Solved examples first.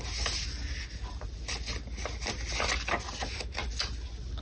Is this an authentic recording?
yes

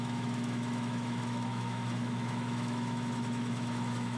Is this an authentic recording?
no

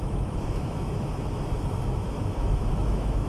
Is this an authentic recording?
no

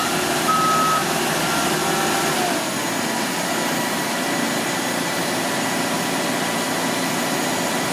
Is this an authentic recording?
yes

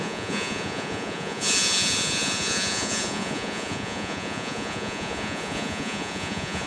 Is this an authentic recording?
no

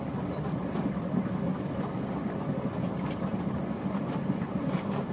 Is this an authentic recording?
yes